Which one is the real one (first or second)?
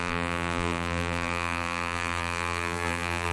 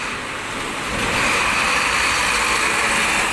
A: second